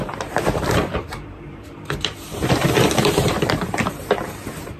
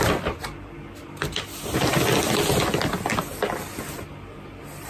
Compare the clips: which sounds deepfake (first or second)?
first